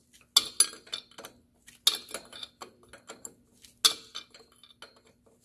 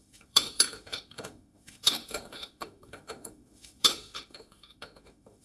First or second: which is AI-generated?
second